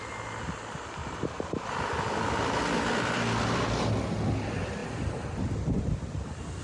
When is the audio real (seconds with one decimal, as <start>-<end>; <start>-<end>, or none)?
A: 0.0-1.0; 3.7-6.6